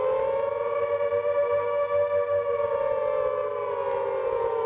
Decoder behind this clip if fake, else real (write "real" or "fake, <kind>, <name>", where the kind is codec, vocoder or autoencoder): real